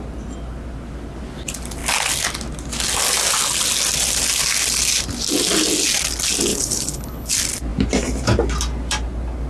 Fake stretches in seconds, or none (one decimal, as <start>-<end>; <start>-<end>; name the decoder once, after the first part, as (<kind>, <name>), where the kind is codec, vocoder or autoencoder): 6.5-7.3 (codec, HILCodec)

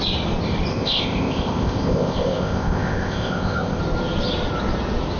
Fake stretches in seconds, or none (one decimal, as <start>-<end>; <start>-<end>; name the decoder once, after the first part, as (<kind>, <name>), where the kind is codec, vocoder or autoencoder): 0.7-3.8 (codec, ZipCodec)

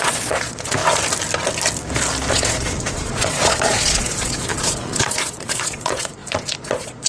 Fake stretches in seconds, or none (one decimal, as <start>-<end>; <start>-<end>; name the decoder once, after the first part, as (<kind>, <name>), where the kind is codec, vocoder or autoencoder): 0.0-0.8 (vocoder, Vocos); 2.3-7.1

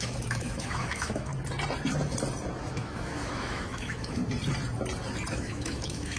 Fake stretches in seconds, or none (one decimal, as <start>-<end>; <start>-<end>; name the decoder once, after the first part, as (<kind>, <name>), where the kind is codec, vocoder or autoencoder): 0.0-1.3 (autoencoder, DAC-VAE); 2.7-4.2; 5.3-6.2